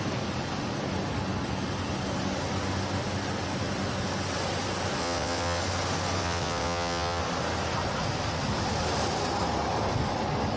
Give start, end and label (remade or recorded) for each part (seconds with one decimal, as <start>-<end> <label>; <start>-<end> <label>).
0.0-5.0 recorded; 5.0-5.6 remade; 5.6-6.2 recorded; 6.2-7.2 remade; 7.2-10.6 recorded